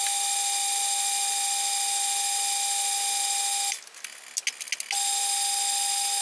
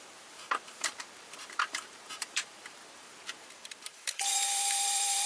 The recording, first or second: first